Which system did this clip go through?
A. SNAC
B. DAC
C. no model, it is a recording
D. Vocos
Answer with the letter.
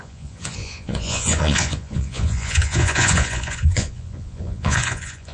D